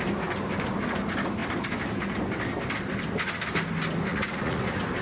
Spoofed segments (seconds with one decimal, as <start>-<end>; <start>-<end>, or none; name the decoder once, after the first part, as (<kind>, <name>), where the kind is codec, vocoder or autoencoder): 4.1-4.6 (vocoder, Vocos)